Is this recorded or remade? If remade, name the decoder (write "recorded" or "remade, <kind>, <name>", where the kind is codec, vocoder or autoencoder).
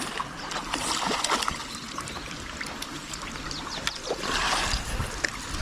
recorded